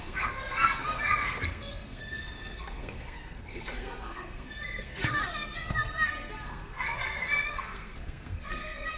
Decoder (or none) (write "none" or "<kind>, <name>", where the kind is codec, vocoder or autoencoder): codec, SNAC